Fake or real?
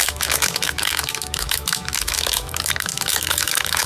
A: fake